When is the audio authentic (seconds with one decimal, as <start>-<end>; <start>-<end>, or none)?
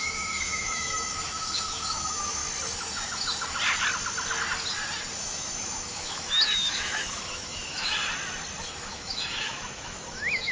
2.4-5.2; 8.0-8.8